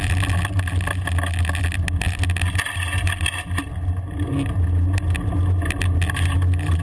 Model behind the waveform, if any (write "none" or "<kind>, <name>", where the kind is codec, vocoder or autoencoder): none